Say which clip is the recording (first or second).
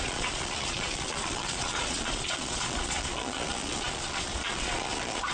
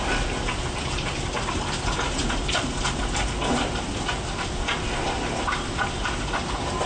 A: second